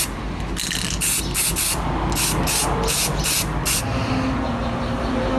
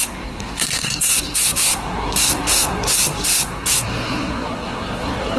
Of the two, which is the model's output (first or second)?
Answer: second